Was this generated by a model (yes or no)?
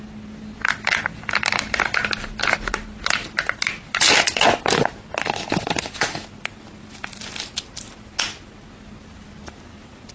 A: no